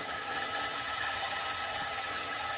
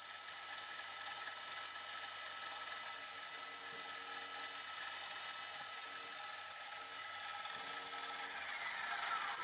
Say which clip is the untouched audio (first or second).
second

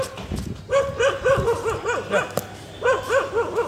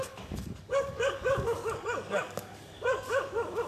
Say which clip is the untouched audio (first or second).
first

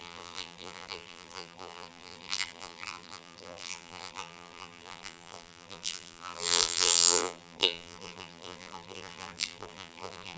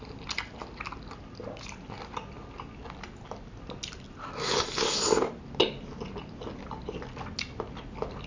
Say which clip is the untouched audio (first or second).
second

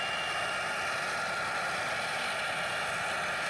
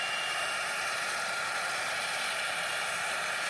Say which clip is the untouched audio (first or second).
first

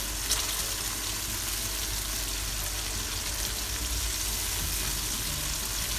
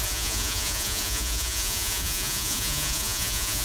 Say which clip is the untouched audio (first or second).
first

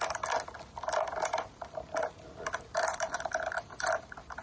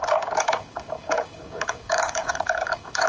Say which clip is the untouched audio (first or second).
first